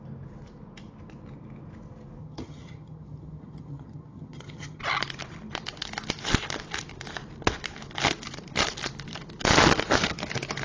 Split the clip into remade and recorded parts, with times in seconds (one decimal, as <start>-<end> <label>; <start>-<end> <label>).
0.0-2.2 recorded; 2.2-4.8 remade; 4.8-10.6 recorded